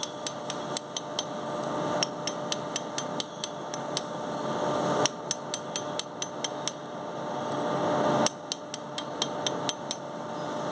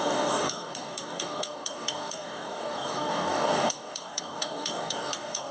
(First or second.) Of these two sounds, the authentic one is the first